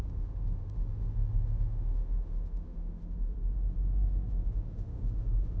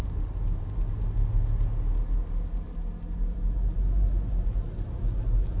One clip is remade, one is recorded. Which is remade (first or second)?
first